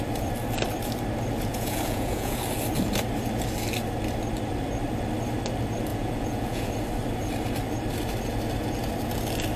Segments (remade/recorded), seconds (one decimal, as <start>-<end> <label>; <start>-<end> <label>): 0.0-1.5 recorded; 1.5-2.4 remade; 2.4-5.9 recorded; 5.9-6.7 remade; 6.7-9.6 recorded